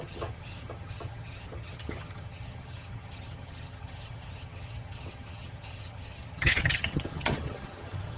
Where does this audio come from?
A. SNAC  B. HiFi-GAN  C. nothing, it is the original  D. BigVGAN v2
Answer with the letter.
B